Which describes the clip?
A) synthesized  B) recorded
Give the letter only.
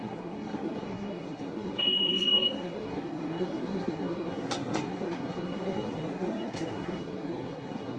A